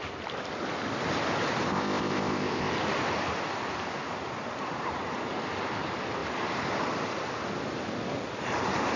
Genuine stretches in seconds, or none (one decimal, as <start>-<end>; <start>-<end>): 0.0-1.7; 2.7-9.0